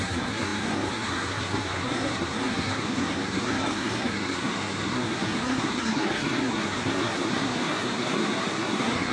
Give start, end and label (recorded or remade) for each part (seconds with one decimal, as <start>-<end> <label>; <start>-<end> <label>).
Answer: 0.0-9.1 remade